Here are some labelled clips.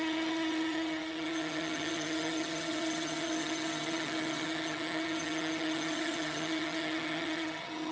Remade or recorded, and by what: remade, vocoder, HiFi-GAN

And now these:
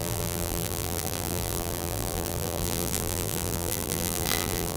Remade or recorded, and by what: remade, vocoder, BigVGAN v2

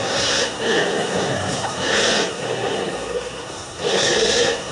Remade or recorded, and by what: remade, codec, SNAC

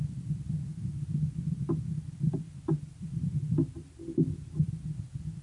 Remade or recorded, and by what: recorded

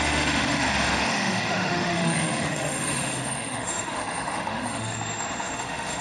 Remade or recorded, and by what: remade, autoencoder, DAC-VAE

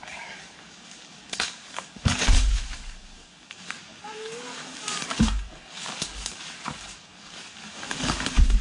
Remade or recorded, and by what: remade, codec, DAC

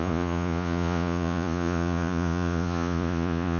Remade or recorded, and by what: remade, vocoder, Vocos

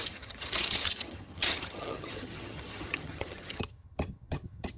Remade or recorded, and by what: remade, vocoder, HiFi-GAN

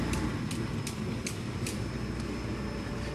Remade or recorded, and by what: recorded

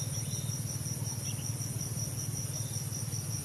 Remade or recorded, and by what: recorded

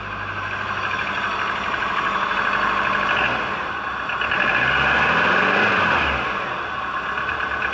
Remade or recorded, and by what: recorded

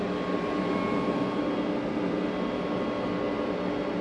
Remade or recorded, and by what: recorded